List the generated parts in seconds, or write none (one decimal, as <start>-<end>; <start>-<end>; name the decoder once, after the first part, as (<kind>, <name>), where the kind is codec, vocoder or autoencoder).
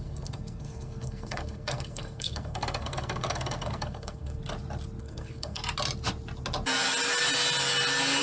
0.0-4.4 (codec, SNAC); 5.0-5.6